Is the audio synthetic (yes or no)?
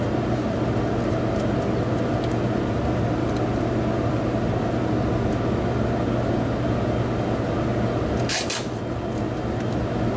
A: no